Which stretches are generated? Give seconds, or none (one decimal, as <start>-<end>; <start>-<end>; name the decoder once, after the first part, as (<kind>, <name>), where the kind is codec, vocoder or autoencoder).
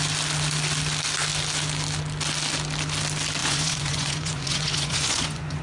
3.4-5.6 (vocoder, Vocos)